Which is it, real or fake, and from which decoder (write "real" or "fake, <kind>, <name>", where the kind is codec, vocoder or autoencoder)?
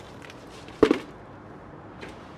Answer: fake, vocoder, BigVGAN v2